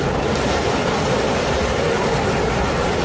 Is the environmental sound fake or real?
real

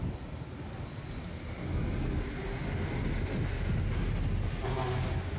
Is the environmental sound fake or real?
real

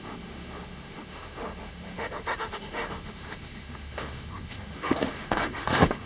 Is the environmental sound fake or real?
fake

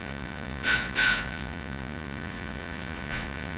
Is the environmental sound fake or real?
fake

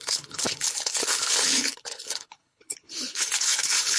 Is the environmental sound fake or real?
fake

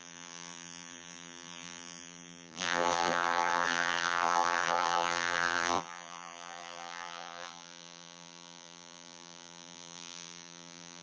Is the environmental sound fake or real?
fake